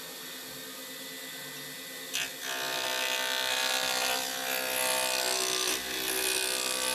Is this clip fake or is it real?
real